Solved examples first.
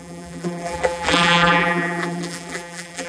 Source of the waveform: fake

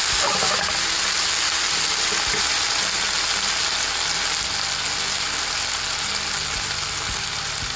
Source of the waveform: real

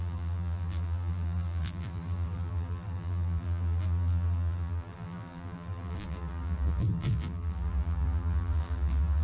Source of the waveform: fake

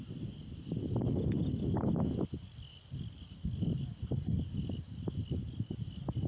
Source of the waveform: real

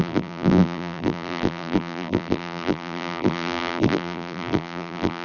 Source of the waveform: fake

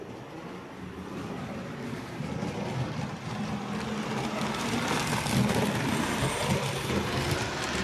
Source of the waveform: fake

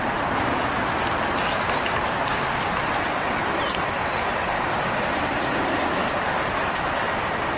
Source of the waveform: real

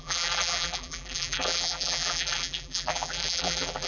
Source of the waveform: fake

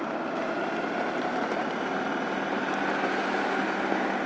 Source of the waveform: real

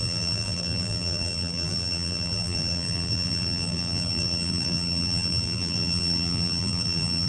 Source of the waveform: fake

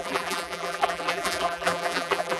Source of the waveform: fake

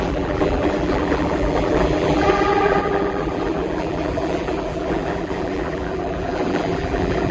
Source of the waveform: fake